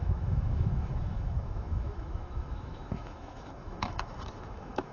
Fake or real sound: fake